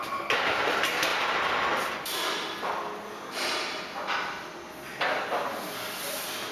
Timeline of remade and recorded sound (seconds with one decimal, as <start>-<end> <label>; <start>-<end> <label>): 0.0-6.5 recorded